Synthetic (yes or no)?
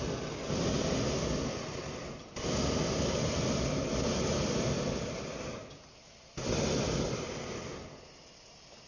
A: no